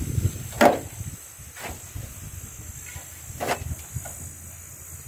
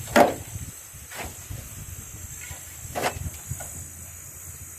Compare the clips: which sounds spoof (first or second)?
second